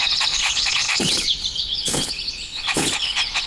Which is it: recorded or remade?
remade